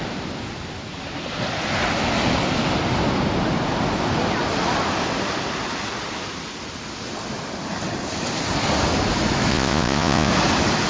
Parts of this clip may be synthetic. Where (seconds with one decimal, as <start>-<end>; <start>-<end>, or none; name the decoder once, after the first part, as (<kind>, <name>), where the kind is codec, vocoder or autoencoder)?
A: 9.5-10.3 (vocoder, Vocos)